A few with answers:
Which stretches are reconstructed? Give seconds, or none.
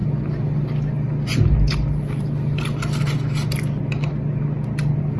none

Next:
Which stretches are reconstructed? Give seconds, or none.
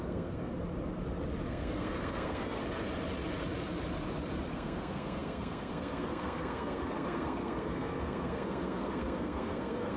0.0-0.5 (codec, SNAC); 1.5-2.6; 4.5-10.0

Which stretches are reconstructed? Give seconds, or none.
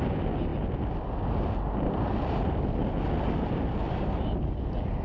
none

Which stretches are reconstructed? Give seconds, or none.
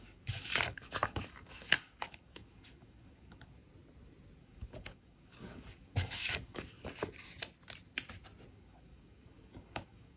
0.0-3.6 (codec, DAC); 4.4-6.8; 8.5-10.2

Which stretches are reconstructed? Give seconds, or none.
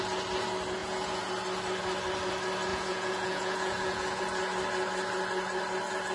0.8-1.3 (vocoder, Vocos); 2.7-4.2